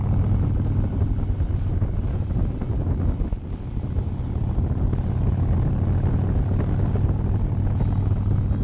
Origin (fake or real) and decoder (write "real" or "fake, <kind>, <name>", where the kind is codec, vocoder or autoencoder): real